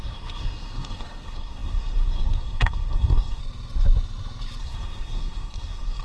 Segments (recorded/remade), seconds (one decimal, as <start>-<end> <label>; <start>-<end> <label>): 0.0-3.4 remade; 3.4-4.6 recorded; 4.6-6.0 remade